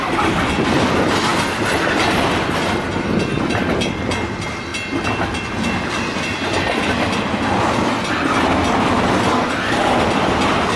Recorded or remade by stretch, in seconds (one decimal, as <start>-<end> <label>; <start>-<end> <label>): 0.0-10.8 recorded